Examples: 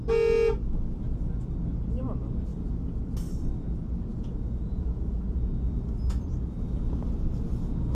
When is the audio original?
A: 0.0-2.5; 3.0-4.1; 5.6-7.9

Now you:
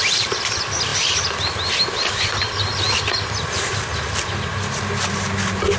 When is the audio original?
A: 0.0-5.8

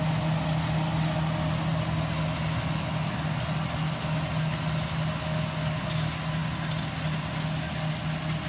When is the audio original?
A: 0.0-8.5

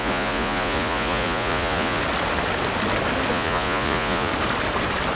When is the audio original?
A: 2.0-3.3; 4.3-5.2

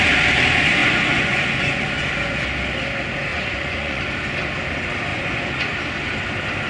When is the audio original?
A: 0.0-0.8; 2.1-3.3; 4.0-5.1; 5.7-6.7